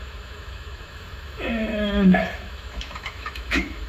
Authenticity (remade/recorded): remade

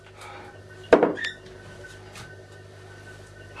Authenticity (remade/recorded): recorded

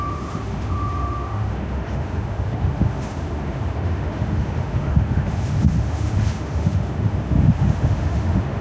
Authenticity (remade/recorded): remade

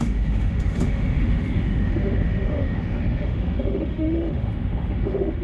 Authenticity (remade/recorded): remade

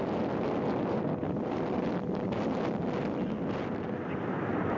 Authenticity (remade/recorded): recorded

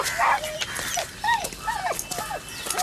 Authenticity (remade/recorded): recorded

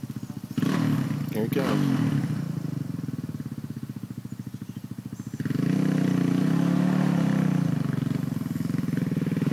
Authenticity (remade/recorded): recorded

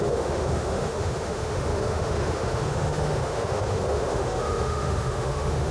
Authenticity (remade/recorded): remade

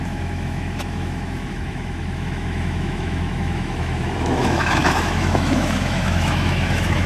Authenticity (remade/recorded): remade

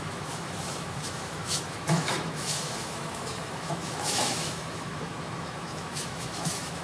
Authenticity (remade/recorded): remade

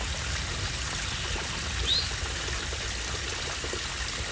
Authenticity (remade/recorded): recorded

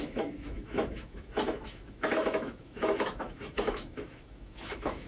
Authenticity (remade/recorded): remade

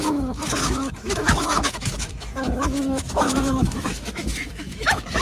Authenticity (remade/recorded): remade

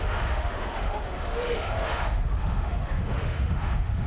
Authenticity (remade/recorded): remade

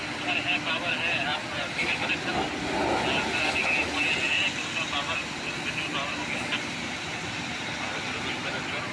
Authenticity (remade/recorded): recorded